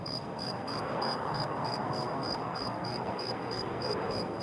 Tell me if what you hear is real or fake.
fake